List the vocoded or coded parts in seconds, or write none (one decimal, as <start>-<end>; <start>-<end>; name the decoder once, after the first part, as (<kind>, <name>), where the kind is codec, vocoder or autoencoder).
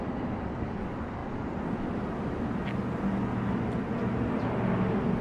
none